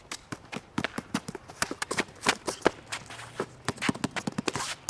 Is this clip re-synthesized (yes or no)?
no